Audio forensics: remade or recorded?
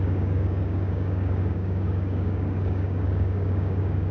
remade